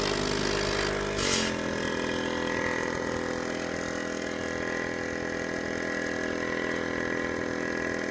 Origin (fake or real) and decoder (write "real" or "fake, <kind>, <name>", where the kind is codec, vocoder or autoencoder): real